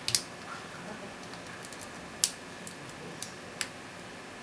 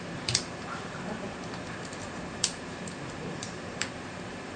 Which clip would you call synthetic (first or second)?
second